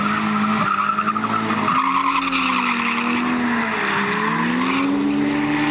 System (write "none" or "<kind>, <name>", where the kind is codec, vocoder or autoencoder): none